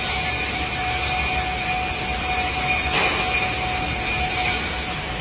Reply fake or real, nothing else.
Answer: real